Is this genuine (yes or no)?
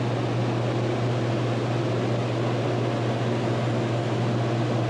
yes